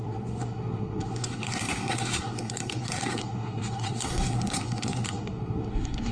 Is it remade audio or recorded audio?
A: remade